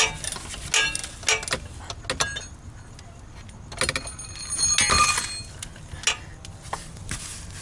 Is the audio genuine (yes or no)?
yes